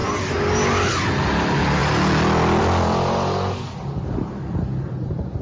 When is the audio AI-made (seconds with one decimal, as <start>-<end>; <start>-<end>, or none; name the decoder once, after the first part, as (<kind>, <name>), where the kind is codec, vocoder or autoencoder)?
none